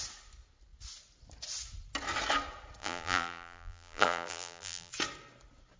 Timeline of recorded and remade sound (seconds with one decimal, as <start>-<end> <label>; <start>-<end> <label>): 0.0-2.8 recorded; 2.8-4.9 remade; 4.9-5.8 recorded